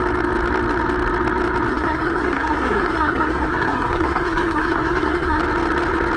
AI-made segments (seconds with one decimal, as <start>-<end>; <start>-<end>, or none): 1.7-5.4